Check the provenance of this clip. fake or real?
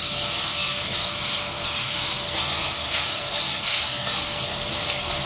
fake